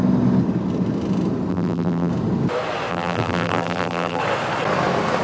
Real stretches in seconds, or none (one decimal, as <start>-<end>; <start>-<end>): 0.0-1.5; 2.1-2.9; 4.2-5.2